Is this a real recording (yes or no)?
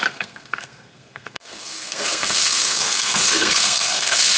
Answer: no